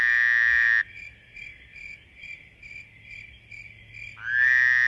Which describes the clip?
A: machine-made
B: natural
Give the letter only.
B